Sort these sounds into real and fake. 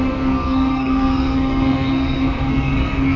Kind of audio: fake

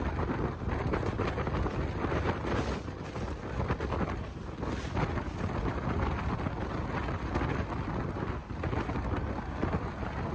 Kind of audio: real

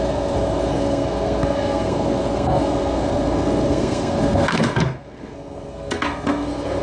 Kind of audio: fake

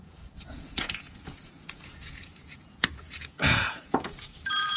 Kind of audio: fake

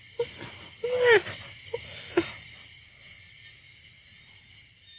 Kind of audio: real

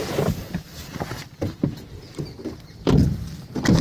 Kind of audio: real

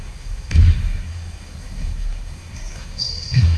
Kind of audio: fake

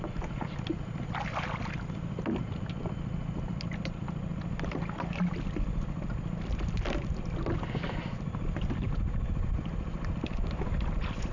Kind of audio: real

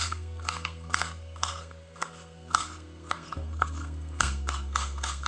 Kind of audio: fake